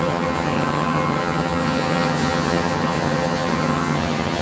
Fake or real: fake